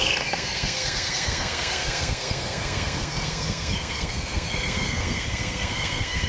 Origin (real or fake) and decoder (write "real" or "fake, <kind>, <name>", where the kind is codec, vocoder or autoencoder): fake, codec, SNAC